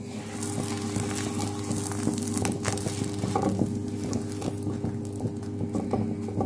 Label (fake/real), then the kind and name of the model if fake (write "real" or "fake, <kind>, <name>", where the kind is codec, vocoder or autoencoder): real